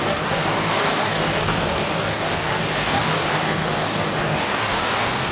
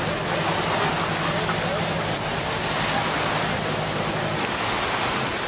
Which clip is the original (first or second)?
second